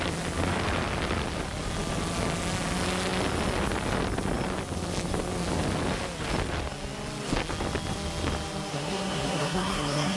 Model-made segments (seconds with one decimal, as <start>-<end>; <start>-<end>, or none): 8.7-10.2